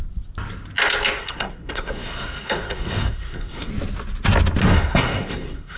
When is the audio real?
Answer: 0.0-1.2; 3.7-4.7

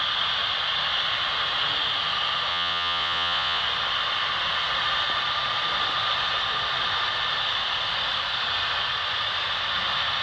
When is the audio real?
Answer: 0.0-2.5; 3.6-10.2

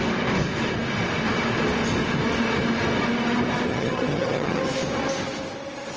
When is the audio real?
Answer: 0.0-3.7; 4.6-6.0

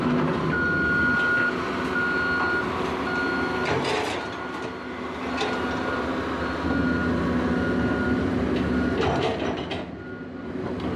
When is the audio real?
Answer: 0.0-11.0

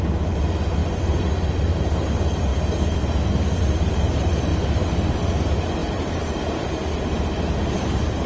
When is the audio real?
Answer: 0.0-2.5; 3.3-4.5; 5.2-5.8; 7.4-8.3

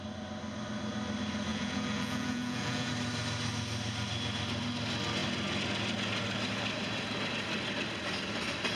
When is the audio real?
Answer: 0.0-1.5; 2.9-8.8

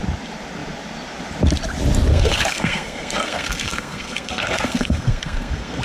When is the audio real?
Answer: 0.0-2.1